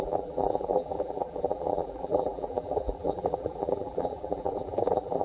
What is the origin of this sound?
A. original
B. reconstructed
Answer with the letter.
B